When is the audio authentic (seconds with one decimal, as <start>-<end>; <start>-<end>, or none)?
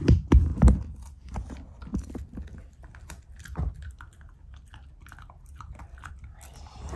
0.0-7.0